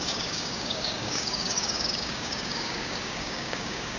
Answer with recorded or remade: remade